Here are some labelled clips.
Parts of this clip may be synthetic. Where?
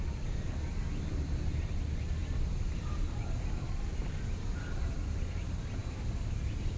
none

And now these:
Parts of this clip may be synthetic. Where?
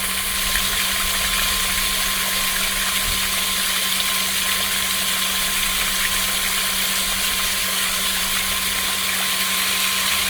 7.6-8.2 (codec, DAC)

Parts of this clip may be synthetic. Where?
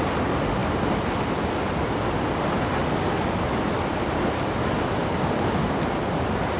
none